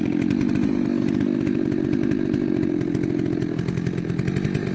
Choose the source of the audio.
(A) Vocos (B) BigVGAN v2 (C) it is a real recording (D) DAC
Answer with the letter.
C